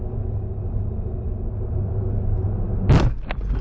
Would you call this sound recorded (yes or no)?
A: yes